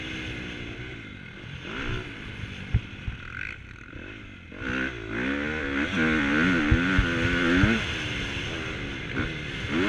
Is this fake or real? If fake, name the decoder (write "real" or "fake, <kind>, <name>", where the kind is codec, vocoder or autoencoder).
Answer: real